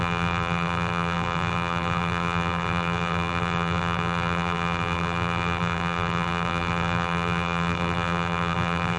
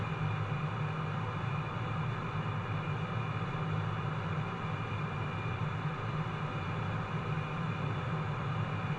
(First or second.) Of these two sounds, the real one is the second